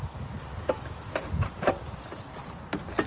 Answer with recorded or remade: recorded